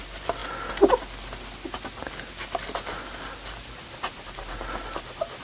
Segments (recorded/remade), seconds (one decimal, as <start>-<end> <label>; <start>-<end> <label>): 0.0-2.0 recorded; 2.0-5.4 remade